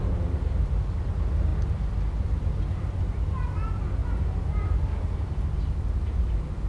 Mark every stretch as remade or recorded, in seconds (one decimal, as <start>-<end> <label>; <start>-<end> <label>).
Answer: 0.0-6.7 recorded